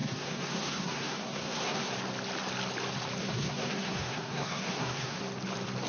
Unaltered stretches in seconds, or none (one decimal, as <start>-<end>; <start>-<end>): 1.9-3.2; 5.2-5.9